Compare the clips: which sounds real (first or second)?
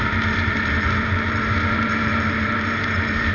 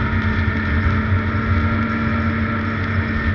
second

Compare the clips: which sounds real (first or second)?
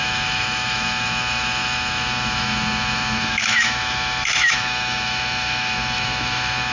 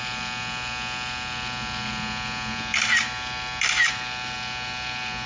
second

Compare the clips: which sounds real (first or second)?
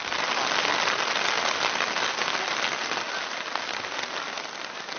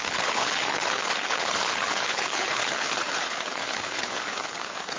first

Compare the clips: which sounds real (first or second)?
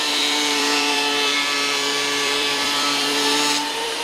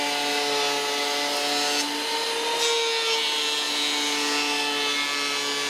second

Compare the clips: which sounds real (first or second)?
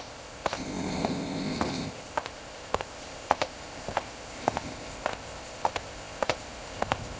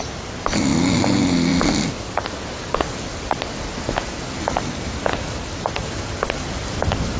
second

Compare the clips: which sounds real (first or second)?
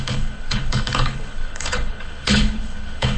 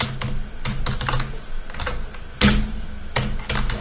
second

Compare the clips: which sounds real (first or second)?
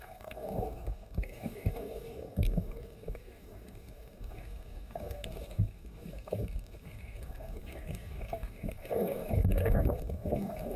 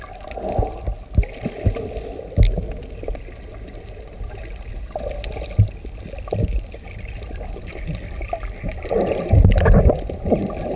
second